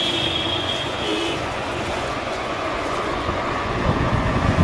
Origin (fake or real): fake